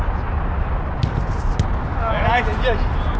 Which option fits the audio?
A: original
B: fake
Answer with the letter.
A